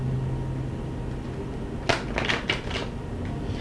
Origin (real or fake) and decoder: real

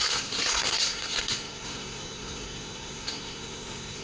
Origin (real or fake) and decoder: fake, codec, SNAC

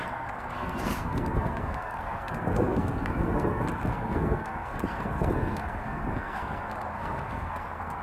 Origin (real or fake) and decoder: fake, codec, SNAC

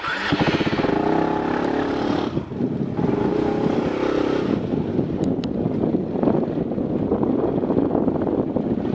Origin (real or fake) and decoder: real